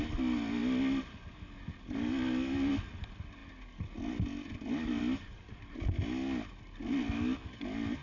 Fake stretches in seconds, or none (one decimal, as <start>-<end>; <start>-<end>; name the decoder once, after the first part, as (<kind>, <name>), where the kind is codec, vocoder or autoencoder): none